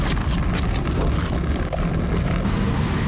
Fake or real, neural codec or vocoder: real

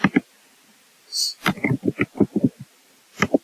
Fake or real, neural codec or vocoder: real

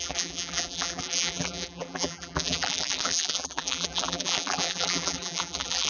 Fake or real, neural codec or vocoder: fake, vocoder, BigVGAN v2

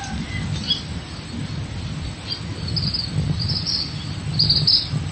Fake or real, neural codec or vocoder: real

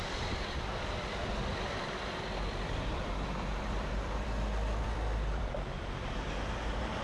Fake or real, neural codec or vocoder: fake, vocoder, BigVGAN v2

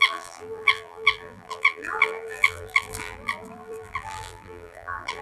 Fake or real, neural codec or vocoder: fake, vocoder, BigVGAN v2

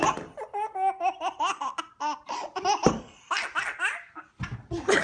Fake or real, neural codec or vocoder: real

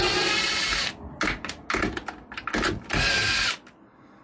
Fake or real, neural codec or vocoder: real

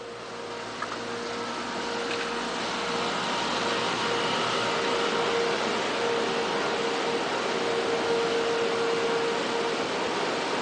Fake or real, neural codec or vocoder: real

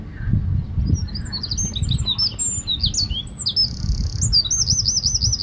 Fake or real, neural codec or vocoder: real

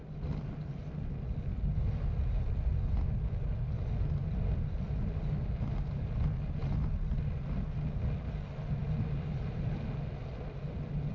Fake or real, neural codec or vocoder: real